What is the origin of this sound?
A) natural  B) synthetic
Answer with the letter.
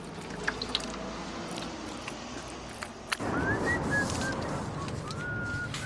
A